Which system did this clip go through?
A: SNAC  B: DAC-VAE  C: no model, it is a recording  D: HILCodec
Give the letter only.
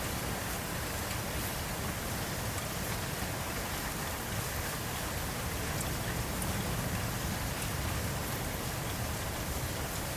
C